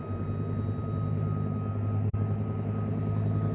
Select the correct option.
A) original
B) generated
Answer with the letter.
A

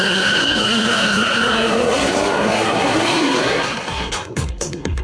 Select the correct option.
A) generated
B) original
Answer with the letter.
A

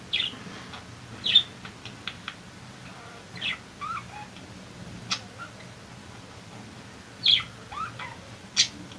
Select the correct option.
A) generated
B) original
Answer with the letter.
B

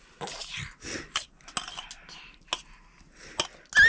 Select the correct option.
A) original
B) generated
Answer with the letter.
A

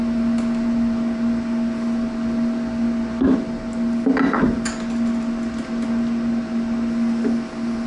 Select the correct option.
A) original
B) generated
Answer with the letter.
A